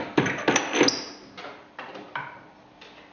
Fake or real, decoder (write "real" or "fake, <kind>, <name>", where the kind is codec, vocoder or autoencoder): real